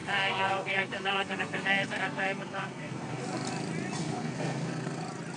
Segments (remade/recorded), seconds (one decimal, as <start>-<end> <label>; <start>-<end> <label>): 0.0-3.2 remade; 3.2-4.0 recorded; 4.0-5.0 remade; 5.0-5.4 recorded